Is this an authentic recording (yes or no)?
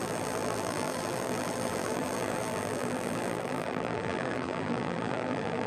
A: no